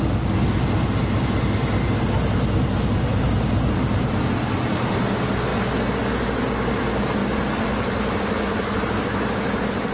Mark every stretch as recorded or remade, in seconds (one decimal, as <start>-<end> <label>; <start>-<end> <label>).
0.0-7.2 recorded; 7.2-7.9 remade; 7.9-9.9 recorded